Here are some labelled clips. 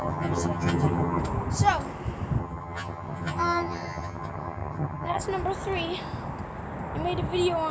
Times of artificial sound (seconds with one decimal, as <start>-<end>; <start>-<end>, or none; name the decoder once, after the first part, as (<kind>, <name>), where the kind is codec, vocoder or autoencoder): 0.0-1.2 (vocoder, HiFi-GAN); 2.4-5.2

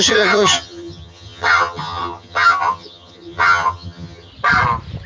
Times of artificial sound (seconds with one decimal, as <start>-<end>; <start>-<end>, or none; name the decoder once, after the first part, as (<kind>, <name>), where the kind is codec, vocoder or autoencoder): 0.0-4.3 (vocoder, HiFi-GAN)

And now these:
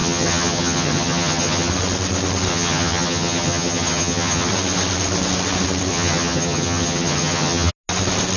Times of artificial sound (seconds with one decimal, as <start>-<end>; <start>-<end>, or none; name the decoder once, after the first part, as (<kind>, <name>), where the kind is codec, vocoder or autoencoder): 0.0-1.7 (vocoder, HiFi-GAN); 2.5-4.5; 5.9-7.7

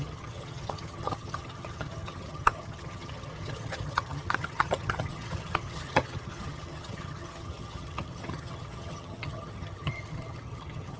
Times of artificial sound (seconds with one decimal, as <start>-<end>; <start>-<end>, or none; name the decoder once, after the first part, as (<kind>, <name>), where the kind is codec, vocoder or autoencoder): 0.0-11.0 (vocoder, HiFi-GAN)